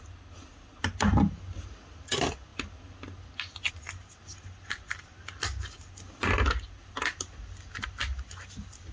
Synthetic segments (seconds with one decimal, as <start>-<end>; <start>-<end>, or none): none